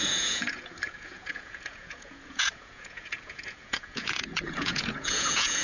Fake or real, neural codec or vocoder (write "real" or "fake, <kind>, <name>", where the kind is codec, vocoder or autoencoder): fake, vocoder, Vocos